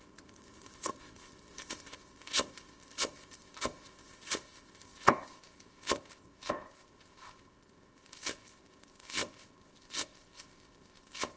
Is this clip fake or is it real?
fake